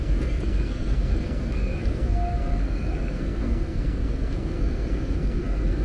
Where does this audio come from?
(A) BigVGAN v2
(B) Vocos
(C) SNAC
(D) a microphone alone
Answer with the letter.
C